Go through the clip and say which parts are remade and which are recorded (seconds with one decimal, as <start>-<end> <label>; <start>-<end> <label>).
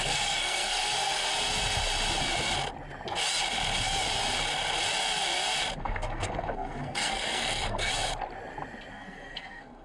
0.0-1.2 remade; 1.2-5.8 recorded; 5.8-7.9 remade; 7.9-8.9 recorded; 8.9-9.8 remade